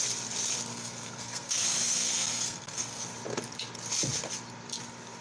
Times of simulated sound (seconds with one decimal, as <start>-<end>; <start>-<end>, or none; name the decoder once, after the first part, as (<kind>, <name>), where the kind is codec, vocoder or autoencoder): 0.7-3.0 (codec, SNAC)